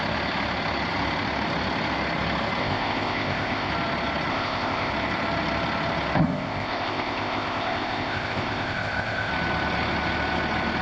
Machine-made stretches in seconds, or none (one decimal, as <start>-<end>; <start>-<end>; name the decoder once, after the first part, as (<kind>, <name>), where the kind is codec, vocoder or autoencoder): 2.6-3.7 (codec, ZipCodec); 4.3-4.9; 6.2-9.3

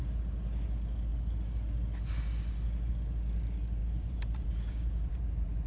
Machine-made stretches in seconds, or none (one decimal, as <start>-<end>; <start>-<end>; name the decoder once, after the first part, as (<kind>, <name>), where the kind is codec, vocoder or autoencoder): 3.8-5.7 (vocoder, BigVGAN v2)